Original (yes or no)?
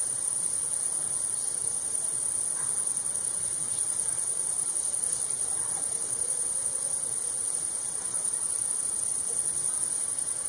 yes